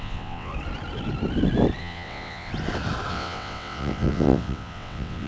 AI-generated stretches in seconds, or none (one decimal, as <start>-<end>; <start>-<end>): 0.0-0.5; 1.8-2.5; 3.1-5.3